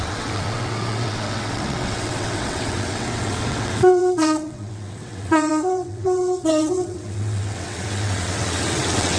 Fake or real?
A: fake